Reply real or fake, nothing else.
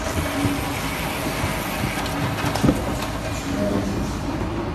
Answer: real